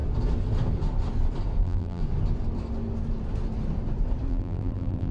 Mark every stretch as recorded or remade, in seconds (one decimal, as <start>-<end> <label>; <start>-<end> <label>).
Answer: 0.0-1.6 recorded; 1.6-2.0 remade; 2.0-4.3 recorded; 4.3-5.1 remade